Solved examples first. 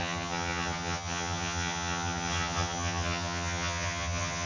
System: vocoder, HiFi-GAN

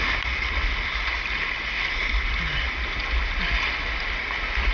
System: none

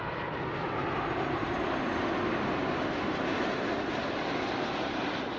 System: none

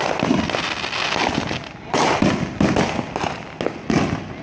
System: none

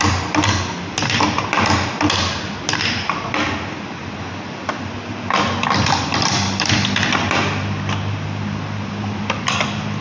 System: none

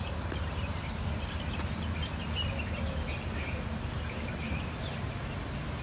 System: none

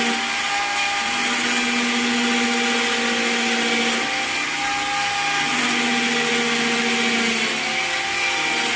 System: none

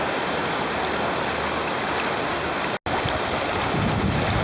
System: none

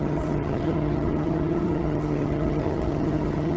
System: vocoder, HiFi-GAN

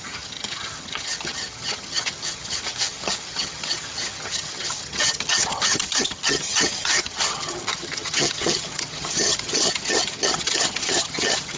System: vocoder, HiFi-GAN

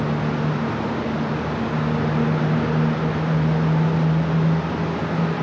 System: none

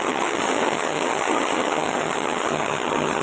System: vocoder, HiFi-GAN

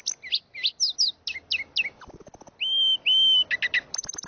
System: none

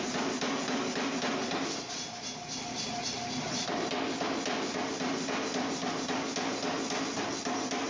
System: none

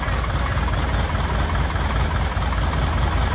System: none